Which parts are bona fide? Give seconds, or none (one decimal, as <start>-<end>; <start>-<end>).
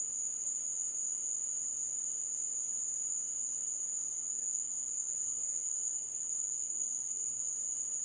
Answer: 0.0-4.1; 7.4-8.0